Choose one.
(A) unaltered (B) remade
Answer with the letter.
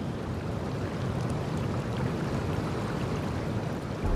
A